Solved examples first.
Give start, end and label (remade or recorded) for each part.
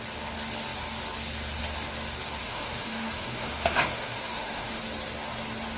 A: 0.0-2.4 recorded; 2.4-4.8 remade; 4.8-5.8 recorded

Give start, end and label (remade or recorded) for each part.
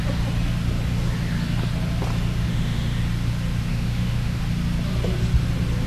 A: 0.0-2.5 recorded; 2.5-3.0 remade; 3.0-3.7 recorded; 3.7-4.4 remade; 4.4-5.9 recorded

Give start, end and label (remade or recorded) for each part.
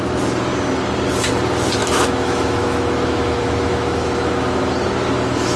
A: 0.0-1.8 recorded; 1.8-4.7 remade; 4.7-5.6 recorded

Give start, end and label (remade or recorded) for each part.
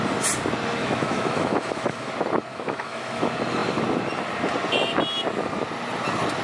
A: 0.0-0.8 recorded; 0.8-2.1 remade; 2.1-2.5 recorded; 2.5-3.2 remade; 3.2-6.4 recorded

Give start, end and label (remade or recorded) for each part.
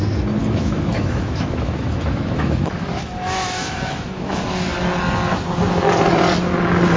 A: 0.0-0.4 recorded; 0.4-4.4 remade; 4.4-7.0 recorded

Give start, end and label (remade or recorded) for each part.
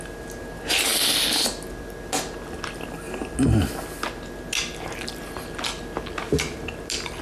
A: 0.0-7.2 recorded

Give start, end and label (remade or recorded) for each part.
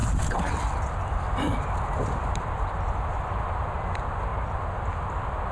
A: 0.0-5.5 recorded